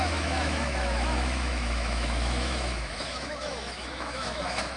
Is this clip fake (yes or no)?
yes